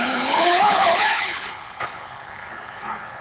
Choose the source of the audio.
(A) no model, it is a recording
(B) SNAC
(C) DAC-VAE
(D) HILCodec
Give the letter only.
D